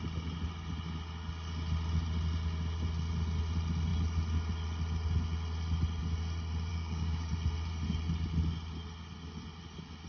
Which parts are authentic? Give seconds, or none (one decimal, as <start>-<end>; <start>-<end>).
0.0-6.7; 7.3-10.1